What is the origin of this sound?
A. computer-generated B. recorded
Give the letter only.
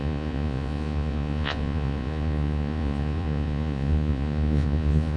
A